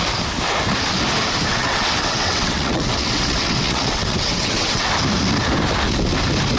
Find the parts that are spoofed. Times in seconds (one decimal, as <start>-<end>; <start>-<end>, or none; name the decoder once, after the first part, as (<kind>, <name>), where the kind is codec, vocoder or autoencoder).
1.5-4.9 (vocoder, WaveNeXt)